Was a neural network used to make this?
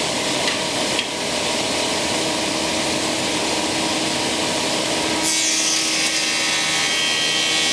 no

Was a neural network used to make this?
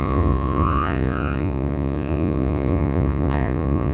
yes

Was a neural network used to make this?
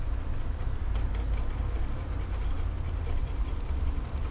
no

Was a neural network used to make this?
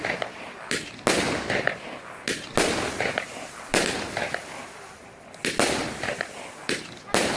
no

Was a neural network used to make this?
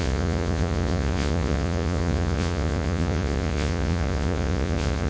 yes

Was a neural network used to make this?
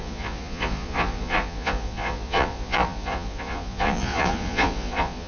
yes